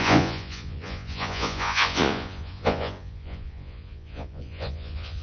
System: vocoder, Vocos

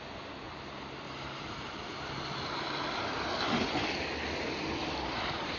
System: none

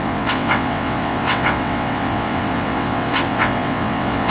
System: vocoder, WaveNeXt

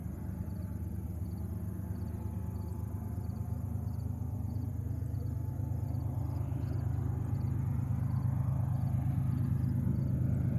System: none